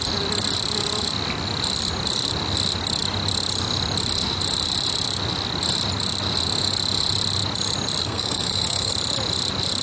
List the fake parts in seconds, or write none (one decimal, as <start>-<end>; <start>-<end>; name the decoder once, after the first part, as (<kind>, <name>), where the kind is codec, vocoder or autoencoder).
8.0-8.9 (codec, SNAC)